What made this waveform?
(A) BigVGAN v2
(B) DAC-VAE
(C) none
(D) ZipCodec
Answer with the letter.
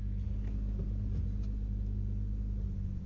C